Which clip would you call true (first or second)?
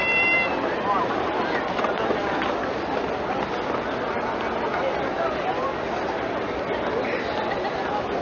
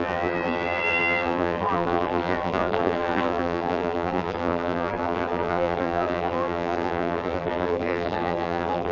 first